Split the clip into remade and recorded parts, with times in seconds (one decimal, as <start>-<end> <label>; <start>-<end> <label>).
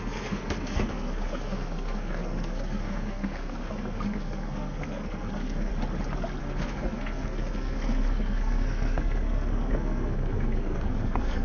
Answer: 0.0-5.7 remade; 5.7-6.4 recorded; 6.4-11.4 remade